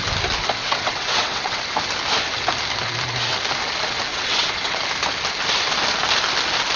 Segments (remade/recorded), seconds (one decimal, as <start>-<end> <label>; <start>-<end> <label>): 0.0-0.6 recorded; 0.6-1.6 remade; 1.6-4.1 recorded; 4.1-4.8 remade; 4.8-6.8 recorded